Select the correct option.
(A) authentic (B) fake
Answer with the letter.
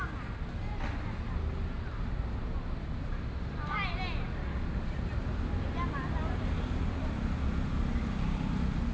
A